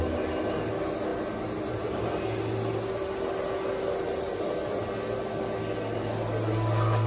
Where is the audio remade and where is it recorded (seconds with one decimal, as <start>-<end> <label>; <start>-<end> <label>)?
0.0-7.1 recorded